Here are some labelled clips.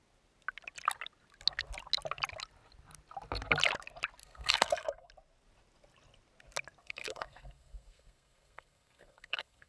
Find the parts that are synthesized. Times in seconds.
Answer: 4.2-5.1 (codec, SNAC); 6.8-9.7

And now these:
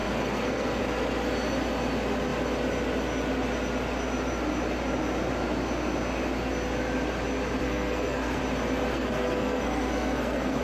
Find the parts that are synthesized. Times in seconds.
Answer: 0.0-0.8 (codec, SNAC); 7.6-8.4; 8.9-10.6

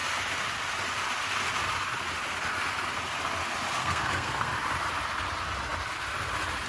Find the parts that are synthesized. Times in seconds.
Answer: 3.8-4.5 (codec, SNAC)

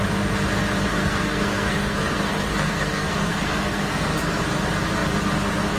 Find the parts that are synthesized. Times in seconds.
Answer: 0.9-4.4 (codec, SNAC)

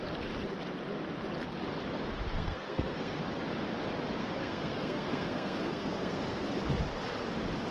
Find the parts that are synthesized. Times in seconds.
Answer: 2.3-3.2 (codec, SNAC); 4.2-6.6

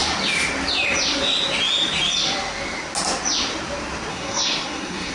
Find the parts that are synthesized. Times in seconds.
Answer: 4.1-5.1 (codec, SNAC)

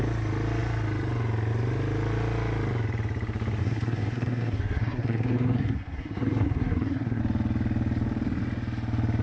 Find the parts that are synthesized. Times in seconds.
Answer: 3.6-7.2 (codec, SNAC)

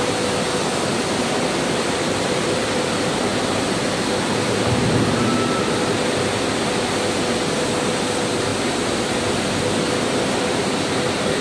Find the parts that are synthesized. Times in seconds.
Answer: none